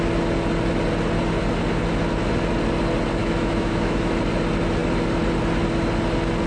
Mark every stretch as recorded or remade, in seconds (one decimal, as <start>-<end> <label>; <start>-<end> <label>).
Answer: 0.0-3.2 recorded; 3.2-4.1 remade; 4.1-6.5 recorded